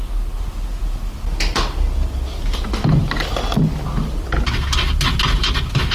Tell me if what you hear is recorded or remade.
recorded